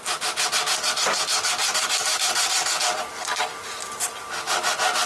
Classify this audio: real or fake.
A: real